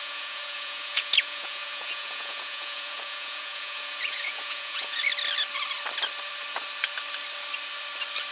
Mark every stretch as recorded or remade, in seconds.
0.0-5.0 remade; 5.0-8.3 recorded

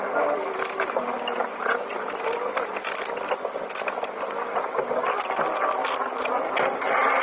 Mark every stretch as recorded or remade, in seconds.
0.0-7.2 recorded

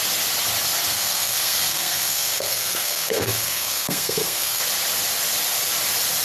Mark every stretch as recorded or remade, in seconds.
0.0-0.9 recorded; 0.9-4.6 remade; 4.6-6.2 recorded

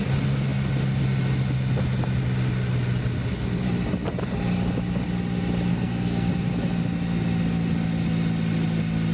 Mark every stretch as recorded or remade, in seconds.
0.0-5.7 recorded; 5.7-6.3 remade; 6.3-9.1 recorded

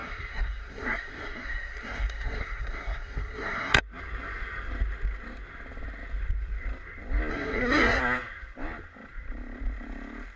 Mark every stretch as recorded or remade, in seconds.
0.0-3.8 remade; 3.8-7.3 recorded; 7.3-8.0 remade; 8.0-10.4 recorded

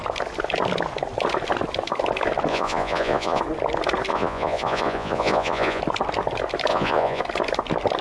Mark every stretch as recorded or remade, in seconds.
0.0-2.5 recorded; 2.5-3.4 remade; 3.4-4.1 recorded; 4.1-5.8 remade; 5.8-6.7 recorded; 6.7-7.2 remade; 7.2-8.0 recorded

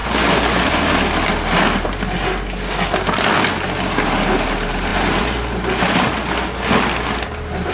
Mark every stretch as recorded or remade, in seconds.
0.0-7.7 recorded

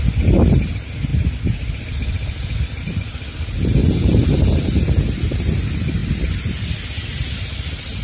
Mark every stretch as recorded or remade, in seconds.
0.0-1.1 recorded; 1.1-2.8 remade; 2.8-6.0 recorded; 6.0-6.5 remade; 6.5-8.0 recorded